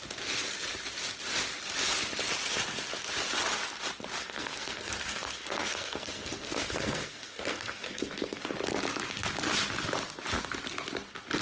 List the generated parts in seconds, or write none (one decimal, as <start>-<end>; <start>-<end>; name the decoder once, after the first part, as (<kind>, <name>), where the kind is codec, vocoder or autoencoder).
4.2-8.4 (codec, SNAC)